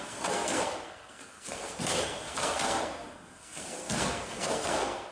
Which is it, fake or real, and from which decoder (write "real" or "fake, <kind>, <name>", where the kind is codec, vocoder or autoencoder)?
fake, codec, SNAC